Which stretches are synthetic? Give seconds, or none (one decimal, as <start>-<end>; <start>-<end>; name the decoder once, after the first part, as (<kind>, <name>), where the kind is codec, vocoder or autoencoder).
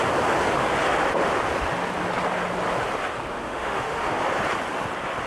3.3-4.1 (autoencoder, DAC-VAE)